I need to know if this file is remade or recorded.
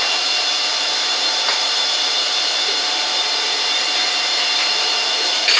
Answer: remade